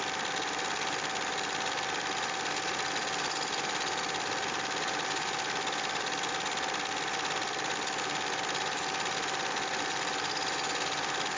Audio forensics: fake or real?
real